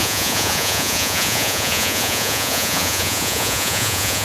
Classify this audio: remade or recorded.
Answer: remade